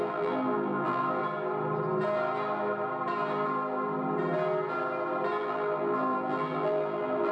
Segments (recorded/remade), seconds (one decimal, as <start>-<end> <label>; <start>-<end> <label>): 0.0-1.2 remade; 1.2-5.4 recorded; 5.4-7.3 remade